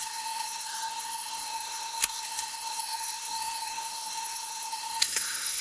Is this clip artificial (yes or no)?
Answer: yes